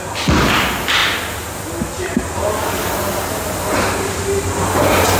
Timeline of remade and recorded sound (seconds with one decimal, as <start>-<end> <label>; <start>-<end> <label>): 0.0-5.2 recorded